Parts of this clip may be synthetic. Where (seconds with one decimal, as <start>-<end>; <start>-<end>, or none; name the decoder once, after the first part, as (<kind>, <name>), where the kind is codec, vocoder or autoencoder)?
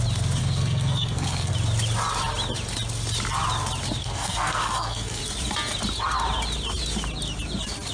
0.4-1.5 (codec, SNAC); 4.0-5.2